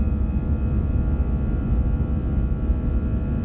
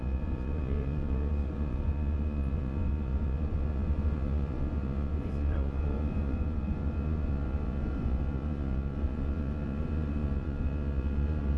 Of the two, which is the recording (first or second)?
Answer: first